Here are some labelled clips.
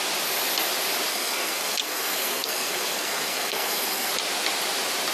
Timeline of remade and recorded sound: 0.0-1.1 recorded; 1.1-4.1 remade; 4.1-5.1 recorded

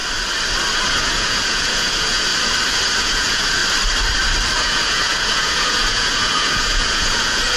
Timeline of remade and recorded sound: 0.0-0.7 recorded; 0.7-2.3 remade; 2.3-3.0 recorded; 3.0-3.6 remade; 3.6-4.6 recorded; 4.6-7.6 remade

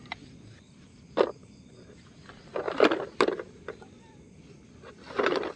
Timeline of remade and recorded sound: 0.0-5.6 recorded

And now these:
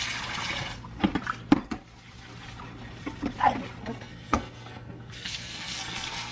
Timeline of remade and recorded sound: 0.0-3.8 recorded; 3.8-6.3 remade

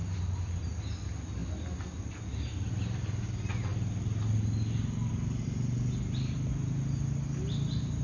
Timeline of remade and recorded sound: 0.0-8.0 recorded

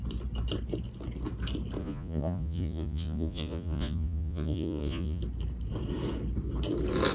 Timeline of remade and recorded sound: 0.0-1.8 recorded; 1.8-5.2 remade; 5.2-7.1 recorded